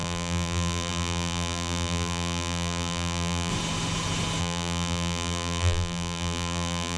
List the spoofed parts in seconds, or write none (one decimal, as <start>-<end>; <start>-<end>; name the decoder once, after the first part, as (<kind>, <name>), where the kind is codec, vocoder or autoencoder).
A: 0.0-3.5 (vocoder, BigVGAN v2); 4.4-7.0